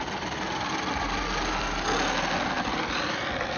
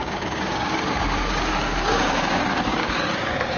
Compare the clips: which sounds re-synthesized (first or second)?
second